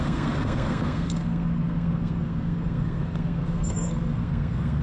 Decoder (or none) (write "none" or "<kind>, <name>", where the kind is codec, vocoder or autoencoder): codec, SNAC